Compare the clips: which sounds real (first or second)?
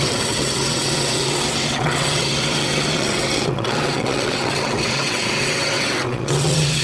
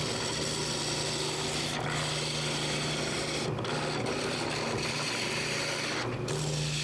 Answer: second